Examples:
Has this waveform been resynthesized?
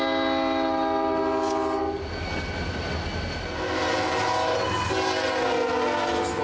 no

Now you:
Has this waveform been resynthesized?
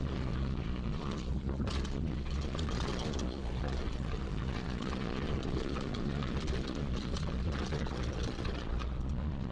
yes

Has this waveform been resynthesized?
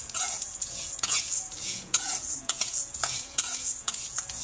yes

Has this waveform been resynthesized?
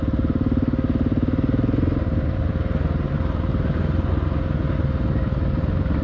no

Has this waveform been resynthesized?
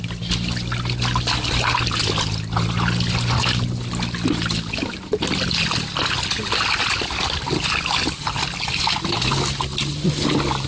no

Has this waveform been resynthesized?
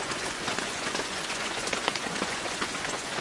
yes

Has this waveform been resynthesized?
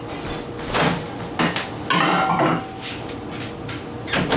no